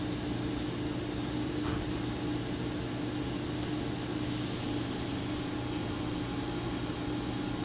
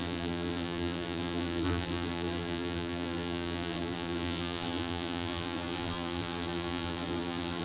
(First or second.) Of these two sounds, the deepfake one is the second